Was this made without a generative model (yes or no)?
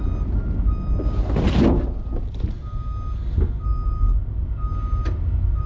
yes